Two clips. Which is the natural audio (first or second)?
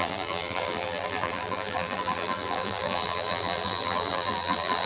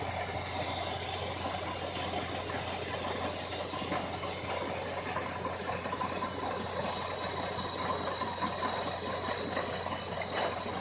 second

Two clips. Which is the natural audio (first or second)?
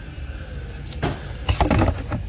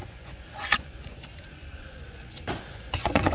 first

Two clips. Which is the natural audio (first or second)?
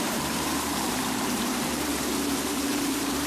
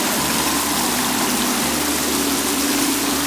second